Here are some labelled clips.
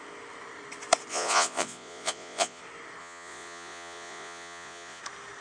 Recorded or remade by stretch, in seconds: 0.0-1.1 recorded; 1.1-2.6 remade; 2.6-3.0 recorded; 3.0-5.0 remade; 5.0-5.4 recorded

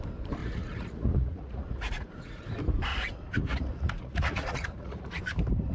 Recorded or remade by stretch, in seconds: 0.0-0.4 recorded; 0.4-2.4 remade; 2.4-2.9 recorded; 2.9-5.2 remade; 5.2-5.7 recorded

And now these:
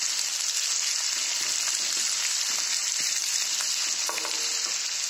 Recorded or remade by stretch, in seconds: 0.0-5.1 recorded

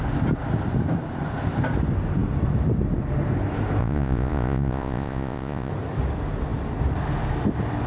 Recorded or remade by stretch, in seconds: 0.0-3.8 recorded; 3.8-5.7 remade; 5.7-7.9 recorded

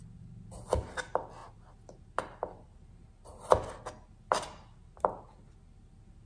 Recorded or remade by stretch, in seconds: 0.0-6.3 recorded